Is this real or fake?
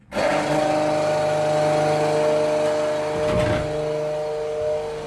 real